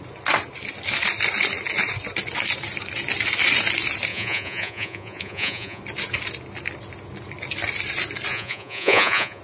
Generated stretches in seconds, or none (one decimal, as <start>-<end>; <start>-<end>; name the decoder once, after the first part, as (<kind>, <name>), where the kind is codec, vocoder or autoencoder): 4.1-5.8 (vocoder, Vocos); 8.3-9.4